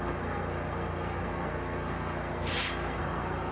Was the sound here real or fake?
fake